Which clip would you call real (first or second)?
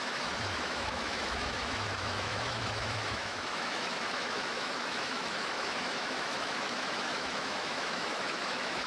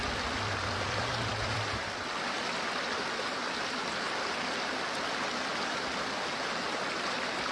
second